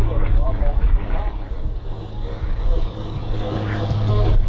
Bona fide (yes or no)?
no